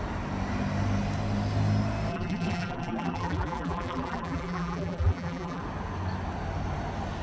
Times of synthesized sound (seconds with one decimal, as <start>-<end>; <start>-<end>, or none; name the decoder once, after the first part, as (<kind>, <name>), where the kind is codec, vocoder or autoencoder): 2.1-5.6 (vocoder, BigVGAN v2)